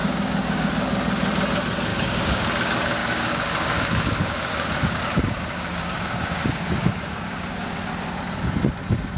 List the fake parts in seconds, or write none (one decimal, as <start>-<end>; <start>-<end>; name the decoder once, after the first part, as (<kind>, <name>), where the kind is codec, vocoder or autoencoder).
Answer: 0.0-0.7 (codec, DAC); 1.9-2.5; 3.0-7.8